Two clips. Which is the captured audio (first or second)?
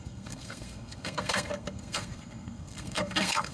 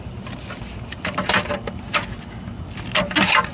second